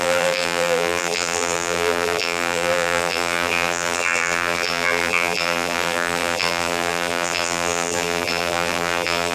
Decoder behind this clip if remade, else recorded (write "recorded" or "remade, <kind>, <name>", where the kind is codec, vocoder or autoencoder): remade, vocoder, BigVGAN v2